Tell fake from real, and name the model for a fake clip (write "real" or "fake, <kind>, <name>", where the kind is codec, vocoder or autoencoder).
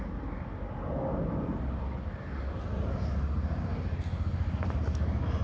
real